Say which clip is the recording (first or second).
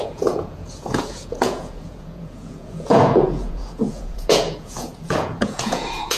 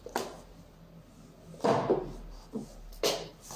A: second